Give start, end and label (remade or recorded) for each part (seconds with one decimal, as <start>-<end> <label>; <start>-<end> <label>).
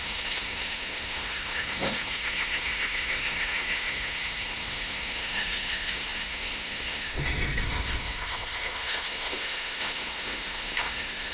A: 0.0-11.3 remade